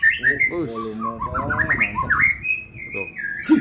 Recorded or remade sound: recorded